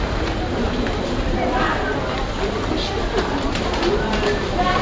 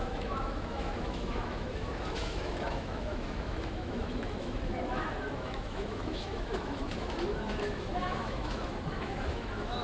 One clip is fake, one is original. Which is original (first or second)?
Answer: first